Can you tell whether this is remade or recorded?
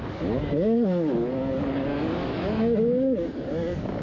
remade